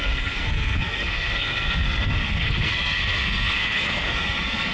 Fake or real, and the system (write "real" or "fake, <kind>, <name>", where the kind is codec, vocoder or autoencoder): fake, codec, SNAC